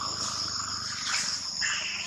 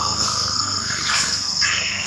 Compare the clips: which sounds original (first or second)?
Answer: first